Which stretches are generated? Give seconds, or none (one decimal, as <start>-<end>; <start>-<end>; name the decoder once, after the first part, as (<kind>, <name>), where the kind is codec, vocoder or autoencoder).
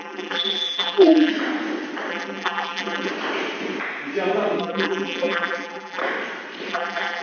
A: 0.0-1.3 (vocoder, BigVGAN v2); 2.1-3.1; 4.6-6.0; 6.7-7.2